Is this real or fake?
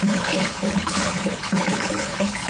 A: fake